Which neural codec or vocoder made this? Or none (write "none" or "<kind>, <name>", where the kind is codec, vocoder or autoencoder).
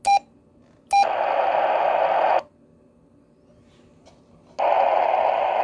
none